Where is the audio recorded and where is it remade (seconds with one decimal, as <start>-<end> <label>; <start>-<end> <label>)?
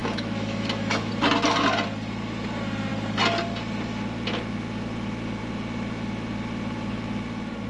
0.0-1.1 remade; 1.1-7.7 recorded